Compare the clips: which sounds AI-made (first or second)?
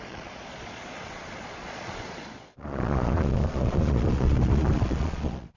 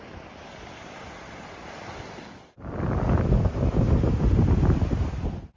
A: first